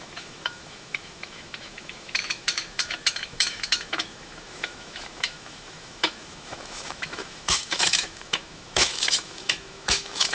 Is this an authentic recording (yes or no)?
no